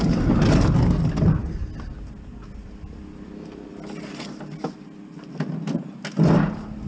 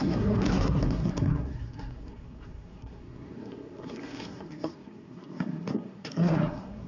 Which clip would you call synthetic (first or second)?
second